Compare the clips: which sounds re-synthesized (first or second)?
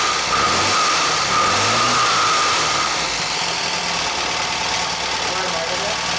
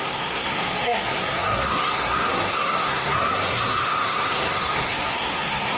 second